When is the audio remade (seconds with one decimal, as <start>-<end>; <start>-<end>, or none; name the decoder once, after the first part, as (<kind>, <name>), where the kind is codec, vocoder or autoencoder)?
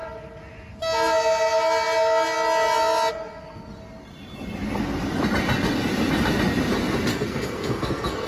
7.1-8.3 (codec, SNAC)